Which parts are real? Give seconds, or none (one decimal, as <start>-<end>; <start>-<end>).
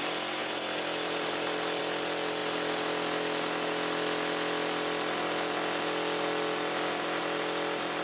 0.0-8.0